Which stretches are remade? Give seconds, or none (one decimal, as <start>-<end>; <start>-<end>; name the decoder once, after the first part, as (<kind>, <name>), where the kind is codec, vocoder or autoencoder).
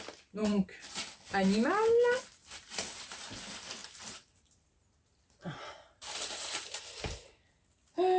0.4-1.1 (vocoder, BigVGAN v2); 2.4-3.4; 3.8-7.5